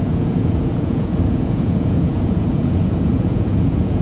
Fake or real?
fake